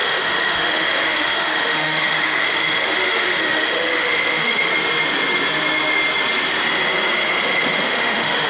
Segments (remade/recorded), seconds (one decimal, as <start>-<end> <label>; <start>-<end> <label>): 0.0-4.7 remade; 4.7-7.4 recorded; 7.4-8.5 remade